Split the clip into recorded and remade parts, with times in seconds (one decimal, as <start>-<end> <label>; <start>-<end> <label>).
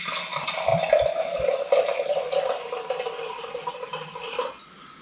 0.0-5.0 recorded